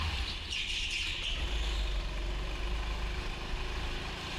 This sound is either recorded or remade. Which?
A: recorded